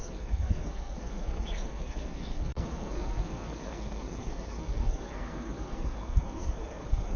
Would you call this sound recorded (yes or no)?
no